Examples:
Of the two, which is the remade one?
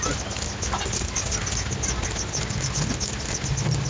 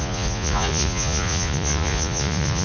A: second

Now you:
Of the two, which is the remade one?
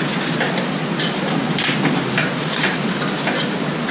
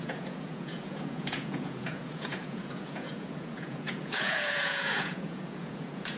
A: second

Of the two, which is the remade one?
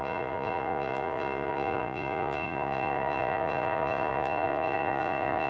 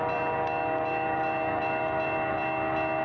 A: first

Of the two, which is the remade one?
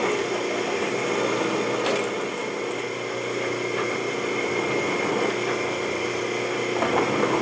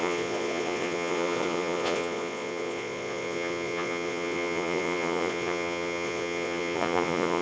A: second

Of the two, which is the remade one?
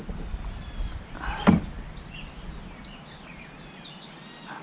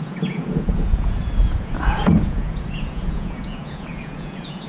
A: second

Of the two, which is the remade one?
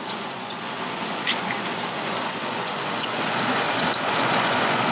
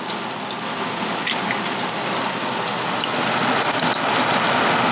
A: first